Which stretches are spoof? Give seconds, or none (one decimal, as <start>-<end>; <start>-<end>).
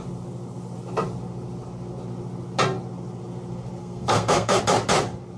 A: 3.8-4.6